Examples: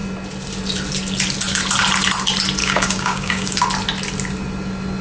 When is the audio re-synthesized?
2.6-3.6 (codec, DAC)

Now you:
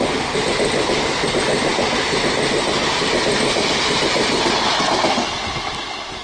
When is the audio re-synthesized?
none

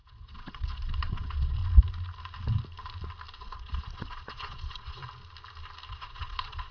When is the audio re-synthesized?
0.0-1.6 (vocoder, Vocos); 3.4-5.0; 5.9-6.7

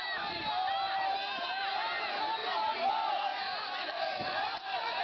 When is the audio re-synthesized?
2.4-2.9 (vocoder, Vocos); 3.3-5.0